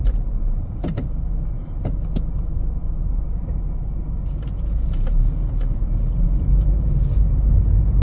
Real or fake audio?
fake